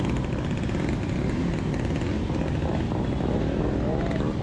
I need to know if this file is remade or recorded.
recorded